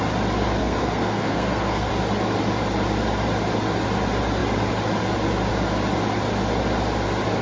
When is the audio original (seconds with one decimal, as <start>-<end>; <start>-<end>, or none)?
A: 0.0-0.6; 1.9-7.4